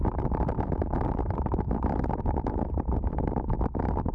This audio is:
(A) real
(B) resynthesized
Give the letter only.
A